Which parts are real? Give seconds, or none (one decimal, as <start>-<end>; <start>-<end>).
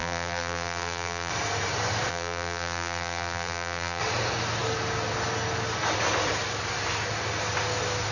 1.3-2.1; 4.0-8.1